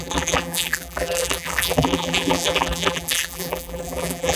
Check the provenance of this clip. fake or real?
fake